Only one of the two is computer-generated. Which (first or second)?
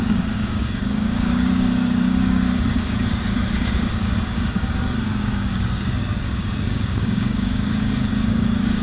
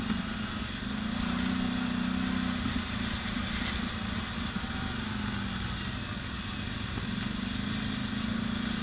first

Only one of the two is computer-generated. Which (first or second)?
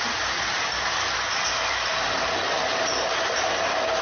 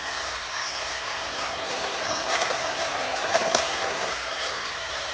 second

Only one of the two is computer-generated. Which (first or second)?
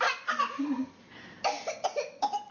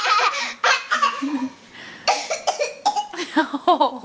second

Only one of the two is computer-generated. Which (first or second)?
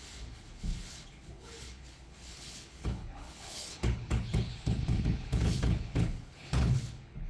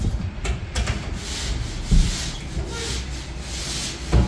first